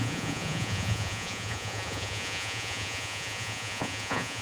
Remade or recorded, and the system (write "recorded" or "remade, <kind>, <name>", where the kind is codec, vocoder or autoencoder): remade, vocoder, Vocos